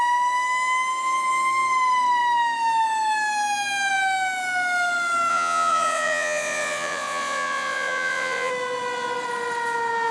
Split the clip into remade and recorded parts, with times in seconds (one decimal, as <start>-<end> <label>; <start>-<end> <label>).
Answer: 0.0-5.3 recorded; 5.3-8.5 remade; 8.5-10.1 recorded